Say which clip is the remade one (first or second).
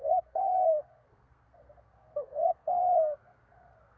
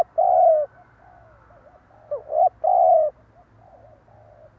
first